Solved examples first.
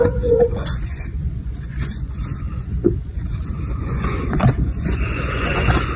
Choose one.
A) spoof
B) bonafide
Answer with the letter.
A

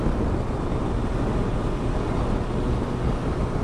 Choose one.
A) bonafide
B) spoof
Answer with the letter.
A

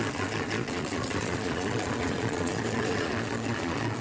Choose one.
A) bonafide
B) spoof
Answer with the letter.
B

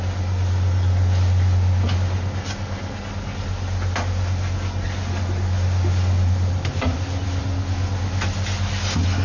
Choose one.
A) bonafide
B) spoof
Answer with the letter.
A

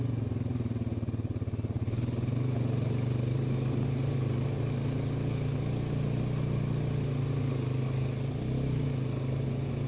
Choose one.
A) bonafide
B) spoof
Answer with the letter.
A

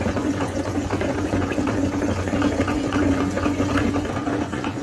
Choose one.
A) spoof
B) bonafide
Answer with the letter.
A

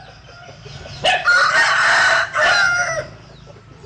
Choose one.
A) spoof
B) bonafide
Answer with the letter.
B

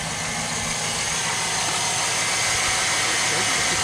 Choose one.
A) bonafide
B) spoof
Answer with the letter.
A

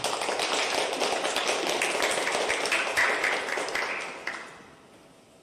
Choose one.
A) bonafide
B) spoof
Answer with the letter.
A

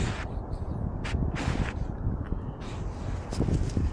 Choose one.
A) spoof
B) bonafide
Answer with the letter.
B